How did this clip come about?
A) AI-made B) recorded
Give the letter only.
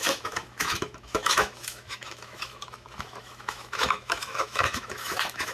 A